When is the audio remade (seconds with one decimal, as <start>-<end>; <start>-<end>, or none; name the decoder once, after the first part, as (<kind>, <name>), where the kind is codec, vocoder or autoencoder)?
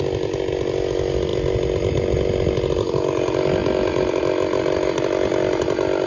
none